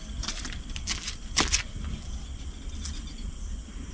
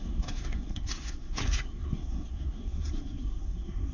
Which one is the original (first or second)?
first